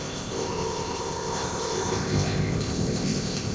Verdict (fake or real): fake